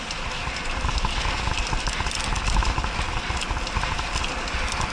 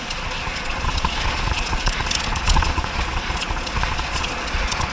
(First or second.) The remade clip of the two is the second